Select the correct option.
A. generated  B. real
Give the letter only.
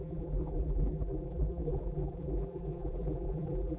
A